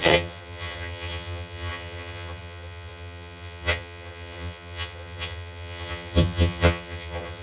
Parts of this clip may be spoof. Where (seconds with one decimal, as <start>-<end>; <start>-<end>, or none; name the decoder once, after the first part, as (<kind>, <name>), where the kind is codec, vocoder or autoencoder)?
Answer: 0.0-7.4 (vocoder, HiFi-GAN)

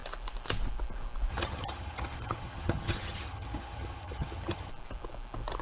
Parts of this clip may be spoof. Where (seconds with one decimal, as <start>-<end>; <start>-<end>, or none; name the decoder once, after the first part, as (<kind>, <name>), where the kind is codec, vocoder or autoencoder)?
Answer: 1.3-4.7 (vocoder, HiFi-GAN)

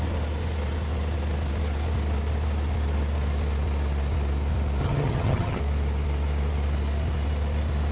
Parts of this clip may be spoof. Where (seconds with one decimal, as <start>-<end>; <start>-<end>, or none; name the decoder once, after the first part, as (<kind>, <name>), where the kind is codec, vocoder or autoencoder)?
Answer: 4.8-5.6 (vocoder, HiFi-GAN)

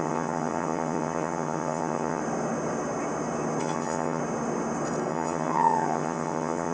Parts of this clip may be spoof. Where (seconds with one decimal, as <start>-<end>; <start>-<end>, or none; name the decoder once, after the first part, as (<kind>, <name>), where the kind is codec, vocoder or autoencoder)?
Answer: 0.0-2.2 (vocoder, HiFi-GAN); 3.6-4.2; 5.1-6.7